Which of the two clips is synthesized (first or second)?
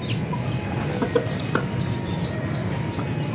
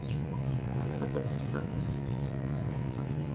second